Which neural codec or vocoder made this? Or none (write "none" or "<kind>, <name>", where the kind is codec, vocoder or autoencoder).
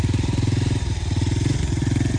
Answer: vocoder, BigVGAN v2